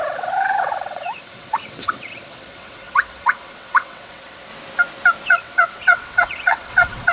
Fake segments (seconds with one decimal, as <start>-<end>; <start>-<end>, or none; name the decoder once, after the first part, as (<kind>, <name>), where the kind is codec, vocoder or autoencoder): 0.0-4.5 (vocoder, WaveNeXt); 5.3-7.1

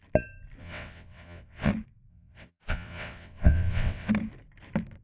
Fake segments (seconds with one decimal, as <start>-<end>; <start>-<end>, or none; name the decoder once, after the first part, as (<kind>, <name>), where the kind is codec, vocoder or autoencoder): 0.6-1.7 (vocoder, WaveNeXt); 2.1-4.1

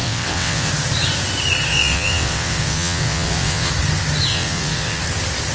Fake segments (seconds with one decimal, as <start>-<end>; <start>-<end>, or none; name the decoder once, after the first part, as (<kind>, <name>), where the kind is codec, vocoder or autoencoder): 0.0-0.7 (vocoder, WaveNeXt); 1.7-3.7; 4.3-5.0

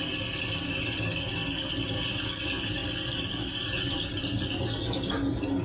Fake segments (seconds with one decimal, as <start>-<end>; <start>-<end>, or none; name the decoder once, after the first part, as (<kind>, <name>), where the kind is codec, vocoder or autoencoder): none

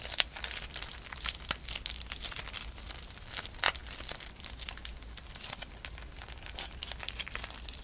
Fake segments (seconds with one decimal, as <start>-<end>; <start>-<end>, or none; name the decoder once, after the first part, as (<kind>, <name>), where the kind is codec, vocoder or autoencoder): none